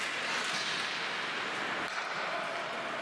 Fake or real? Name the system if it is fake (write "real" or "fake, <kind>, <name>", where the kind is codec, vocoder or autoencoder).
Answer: real